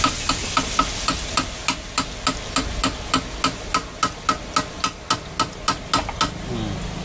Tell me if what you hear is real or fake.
real